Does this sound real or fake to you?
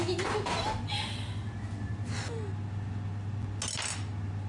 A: real